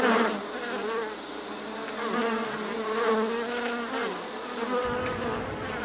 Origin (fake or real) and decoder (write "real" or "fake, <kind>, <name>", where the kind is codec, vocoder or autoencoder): real